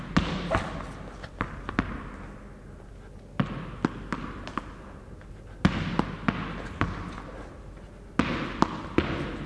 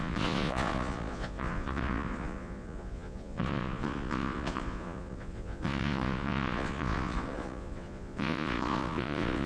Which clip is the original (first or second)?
first